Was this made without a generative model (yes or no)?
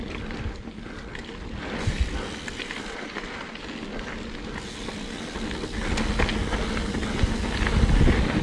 yes